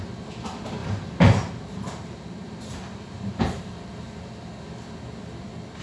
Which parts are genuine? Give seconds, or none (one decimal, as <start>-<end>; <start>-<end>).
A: 0.0-0.8; 4.3-5.8